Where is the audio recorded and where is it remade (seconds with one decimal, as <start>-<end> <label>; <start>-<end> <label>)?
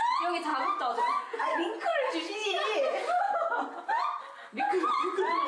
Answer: 0.0-5.5 recorded